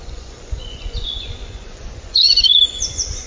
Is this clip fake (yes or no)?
yes